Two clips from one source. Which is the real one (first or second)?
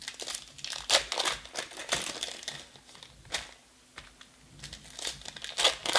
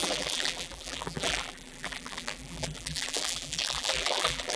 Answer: first